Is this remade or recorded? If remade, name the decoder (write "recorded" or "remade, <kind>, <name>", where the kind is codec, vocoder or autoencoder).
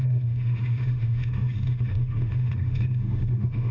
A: remade, autoencoder, DAC-VAE